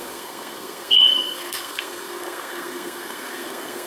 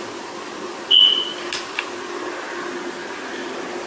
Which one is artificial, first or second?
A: first